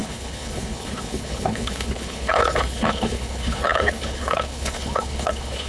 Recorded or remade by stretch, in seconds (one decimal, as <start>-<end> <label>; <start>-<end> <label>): 0.0-5.7 remade